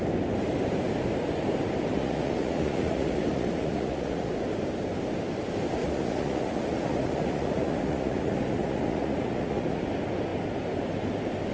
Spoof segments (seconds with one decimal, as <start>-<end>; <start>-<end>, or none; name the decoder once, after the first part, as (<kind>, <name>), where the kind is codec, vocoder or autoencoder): 1.9-4.3 (vocoder, Vocos); 5.8-9.8